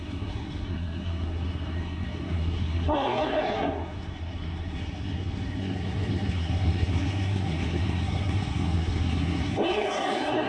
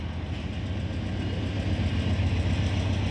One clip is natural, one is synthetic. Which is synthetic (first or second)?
first